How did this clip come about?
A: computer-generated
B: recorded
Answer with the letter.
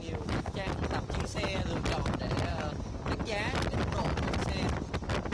B